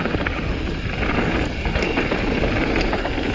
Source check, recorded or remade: recorded